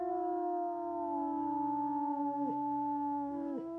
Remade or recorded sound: remade